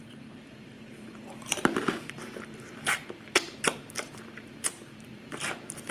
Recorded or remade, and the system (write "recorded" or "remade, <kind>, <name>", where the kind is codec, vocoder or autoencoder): remade, vocoder, BigVGAN v2